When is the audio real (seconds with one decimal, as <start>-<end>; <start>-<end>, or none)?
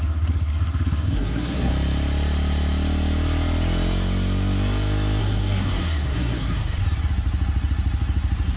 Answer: 1.7-5.2; 6.8-8.6